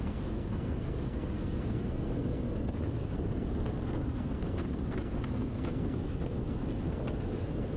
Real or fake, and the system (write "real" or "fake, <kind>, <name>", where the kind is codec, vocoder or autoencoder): fake, codec, SNAC